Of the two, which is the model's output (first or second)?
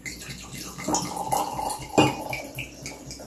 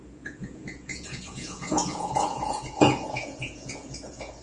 second